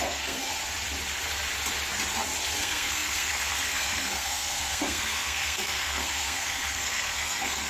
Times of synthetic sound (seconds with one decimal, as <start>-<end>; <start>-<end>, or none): 0.0-0.5; 2.6-7.7

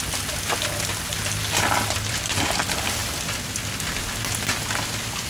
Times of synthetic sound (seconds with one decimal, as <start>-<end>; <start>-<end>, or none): 1.4-2.6

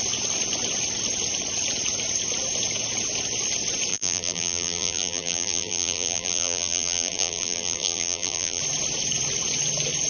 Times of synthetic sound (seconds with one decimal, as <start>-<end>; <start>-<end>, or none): 3.9-8.6

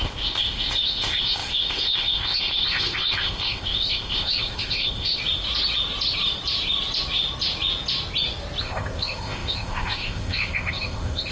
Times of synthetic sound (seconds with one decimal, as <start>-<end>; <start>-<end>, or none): 0.0-5.2; 8.6-11.3

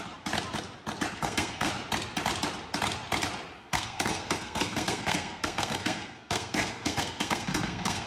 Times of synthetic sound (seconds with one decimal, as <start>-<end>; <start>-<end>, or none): 1.2-1.7; 3.6-8.1

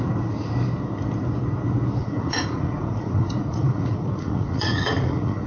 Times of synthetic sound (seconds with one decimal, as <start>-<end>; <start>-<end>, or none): 2.0-5.5

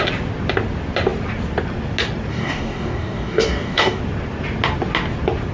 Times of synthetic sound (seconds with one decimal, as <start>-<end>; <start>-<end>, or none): 2.3-4.0